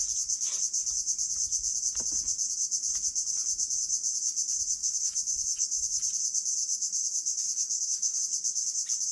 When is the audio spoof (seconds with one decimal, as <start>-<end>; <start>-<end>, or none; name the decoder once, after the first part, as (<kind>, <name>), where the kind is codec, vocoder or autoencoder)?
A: 4.8-6.0 (autoencoder, DAC-VAE); 6.6-8.2